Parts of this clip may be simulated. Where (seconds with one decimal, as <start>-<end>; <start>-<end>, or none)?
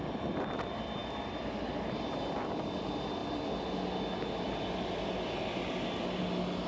none